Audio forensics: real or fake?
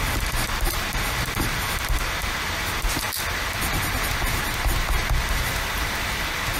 real